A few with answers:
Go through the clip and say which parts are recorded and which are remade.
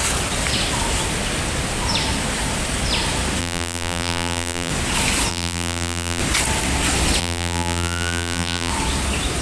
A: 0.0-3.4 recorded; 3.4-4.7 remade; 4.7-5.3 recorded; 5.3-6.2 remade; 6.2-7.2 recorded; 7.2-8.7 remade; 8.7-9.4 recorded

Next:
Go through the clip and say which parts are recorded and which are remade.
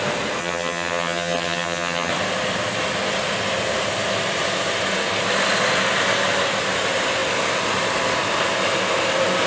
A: 0.0-0.4 recorded; 0.4-2.1 remade; 2.1-9.5 recorded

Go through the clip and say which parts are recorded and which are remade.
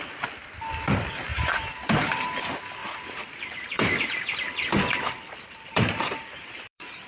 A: 0.0-1.3 recorded; 1.3-2.4 remade; 2.4-2.8 recorded; 2.8-7.1 remade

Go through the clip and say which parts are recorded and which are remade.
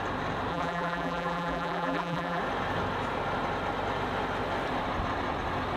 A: 0.0-0.5 recorded; 0.5-2.4 remade; 2.4-5.8 recorded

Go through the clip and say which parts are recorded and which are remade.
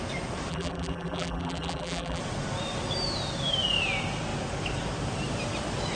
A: 0.0-0.5 recorded; 0.5-2.2 remade; 2.2-6.0 recorded